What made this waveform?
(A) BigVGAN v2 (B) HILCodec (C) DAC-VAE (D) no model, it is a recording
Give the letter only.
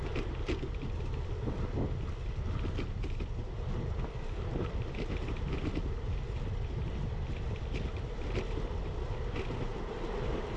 D